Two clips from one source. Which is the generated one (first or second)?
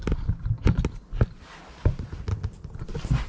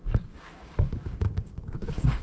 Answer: second